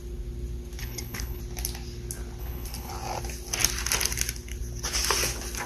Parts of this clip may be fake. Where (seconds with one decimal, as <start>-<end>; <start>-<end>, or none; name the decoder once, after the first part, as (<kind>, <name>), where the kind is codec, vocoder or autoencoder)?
0.8-1.4 (codec, HILCodec); 2.4-2.9